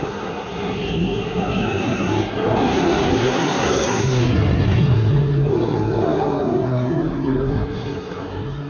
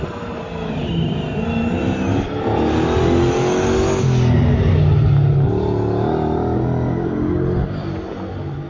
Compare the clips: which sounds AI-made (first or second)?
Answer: first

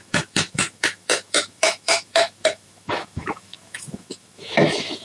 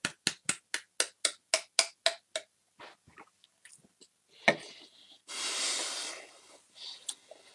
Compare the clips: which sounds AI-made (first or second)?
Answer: first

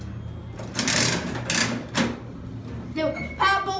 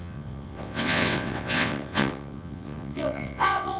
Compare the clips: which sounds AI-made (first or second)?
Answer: second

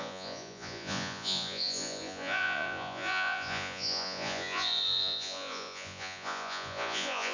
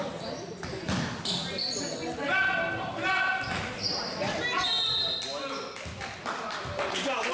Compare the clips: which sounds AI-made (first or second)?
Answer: first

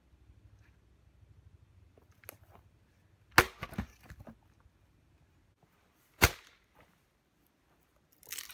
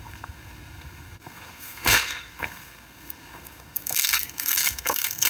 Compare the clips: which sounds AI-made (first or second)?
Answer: second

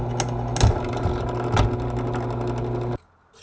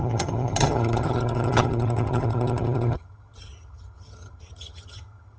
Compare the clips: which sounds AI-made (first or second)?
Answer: second